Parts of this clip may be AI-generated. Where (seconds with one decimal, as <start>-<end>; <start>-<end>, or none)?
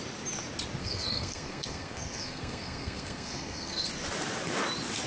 0.8-3.9